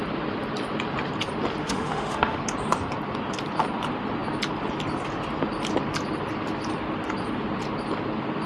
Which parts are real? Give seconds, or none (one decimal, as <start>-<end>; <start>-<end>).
0.0-1.6; 2.4-8.5